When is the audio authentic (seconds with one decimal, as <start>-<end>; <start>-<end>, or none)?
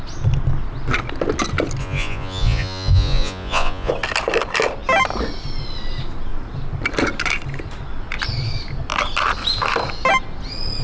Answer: 0.0-1.8; 3.9-10.8